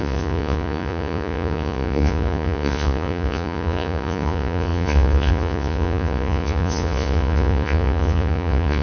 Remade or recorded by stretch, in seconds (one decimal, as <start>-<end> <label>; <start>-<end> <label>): 0.0-8.8 remade